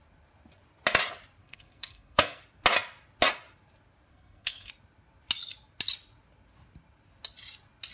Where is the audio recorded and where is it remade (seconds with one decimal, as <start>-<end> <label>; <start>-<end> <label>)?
0.0-1.4 recorded; 1.4-2.4 remade; 2.4-4.1 recorded; 4.1-4.7 remade; 4.7-7.9 recorded